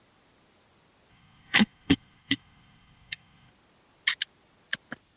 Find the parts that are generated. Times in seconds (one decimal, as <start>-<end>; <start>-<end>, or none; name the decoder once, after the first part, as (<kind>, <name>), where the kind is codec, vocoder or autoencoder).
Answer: 1.1-3.5 (codec, SNAC)